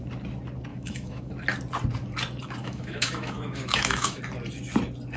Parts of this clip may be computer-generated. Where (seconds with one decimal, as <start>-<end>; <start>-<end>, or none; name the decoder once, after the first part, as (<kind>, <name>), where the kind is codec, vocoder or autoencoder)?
0.7-1.3 (autoencoder, DAC-VAE); 2.6-4.2